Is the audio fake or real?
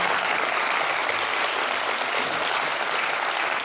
real